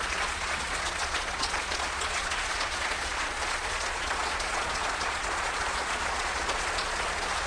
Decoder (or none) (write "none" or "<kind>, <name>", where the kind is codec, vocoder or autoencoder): vocoder, Vocos